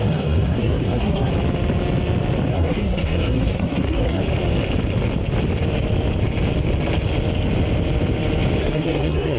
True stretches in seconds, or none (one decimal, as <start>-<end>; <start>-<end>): 1.3-2.5; 4.2-8.6